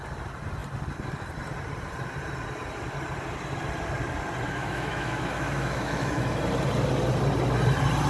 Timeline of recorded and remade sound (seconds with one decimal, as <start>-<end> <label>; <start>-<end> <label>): 0.0-4.6 recorded; 4.6-6.4 remade; 6.4-8.1 recorded